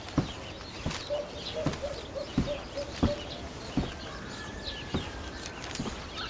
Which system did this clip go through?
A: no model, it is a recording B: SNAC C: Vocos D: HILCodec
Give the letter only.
A